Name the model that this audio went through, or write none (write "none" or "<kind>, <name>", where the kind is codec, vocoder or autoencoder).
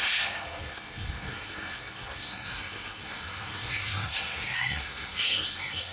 codec, SNAC